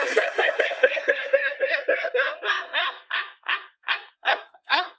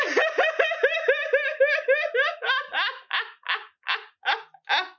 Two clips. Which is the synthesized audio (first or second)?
first